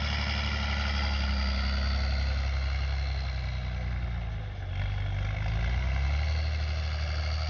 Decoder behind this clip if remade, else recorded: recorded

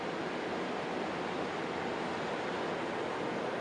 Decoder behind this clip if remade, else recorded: recorded